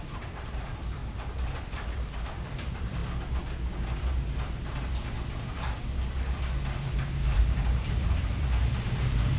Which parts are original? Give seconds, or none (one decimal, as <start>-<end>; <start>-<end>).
1.0-1.6; 3.0-6.7